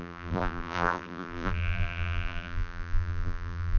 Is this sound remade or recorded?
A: remade